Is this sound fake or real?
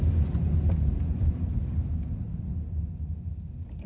real